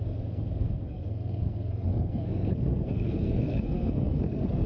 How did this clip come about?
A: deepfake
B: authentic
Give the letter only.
A